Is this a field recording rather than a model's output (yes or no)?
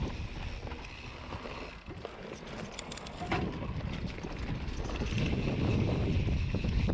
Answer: yes